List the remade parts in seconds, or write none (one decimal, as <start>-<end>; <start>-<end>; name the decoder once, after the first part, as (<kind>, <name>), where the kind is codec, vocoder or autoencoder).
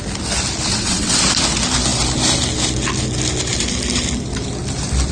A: 0.7-1.2 (vocoder, WaveNeXt)